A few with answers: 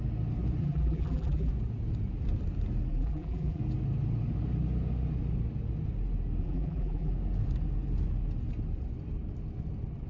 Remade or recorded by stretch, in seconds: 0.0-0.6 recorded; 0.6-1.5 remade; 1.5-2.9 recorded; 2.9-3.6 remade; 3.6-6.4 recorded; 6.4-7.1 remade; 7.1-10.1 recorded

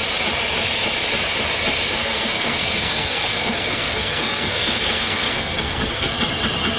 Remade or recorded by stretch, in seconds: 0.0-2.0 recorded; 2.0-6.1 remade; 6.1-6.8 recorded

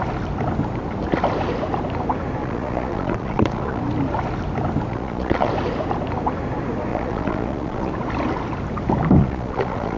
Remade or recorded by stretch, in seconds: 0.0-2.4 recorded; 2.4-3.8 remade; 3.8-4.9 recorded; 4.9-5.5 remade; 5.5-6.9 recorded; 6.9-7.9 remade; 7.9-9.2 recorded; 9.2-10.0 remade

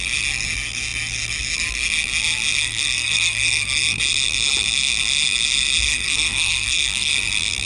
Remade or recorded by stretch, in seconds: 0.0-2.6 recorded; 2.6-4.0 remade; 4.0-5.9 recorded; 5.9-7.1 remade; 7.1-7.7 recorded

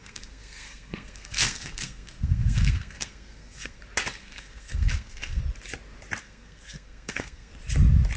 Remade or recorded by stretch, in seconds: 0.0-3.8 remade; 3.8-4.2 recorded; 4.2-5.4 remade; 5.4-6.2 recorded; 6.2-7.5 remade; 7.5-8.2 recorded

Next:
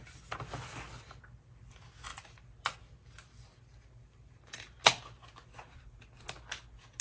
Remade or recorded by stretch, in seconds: 0.0-2.1 recorded; 2.1-2.8 remade; 2.8-4.0 recorded; 4.0-4.9 remade; 4.9-7.0 recorded